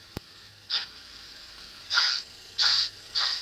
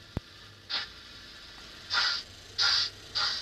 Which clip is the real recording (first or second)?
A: second